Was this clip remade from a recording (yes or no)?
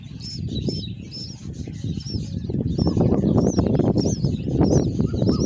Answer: no